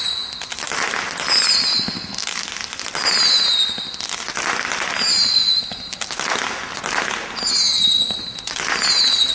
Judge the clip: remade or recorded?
recorded